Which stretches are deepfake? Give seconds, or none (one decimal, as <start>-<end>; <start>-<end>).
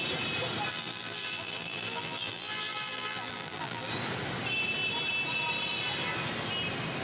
0.7-3.9